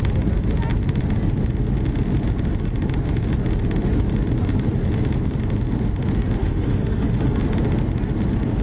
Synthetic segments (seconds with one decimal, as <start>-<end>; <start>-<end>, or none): 6.4-7.1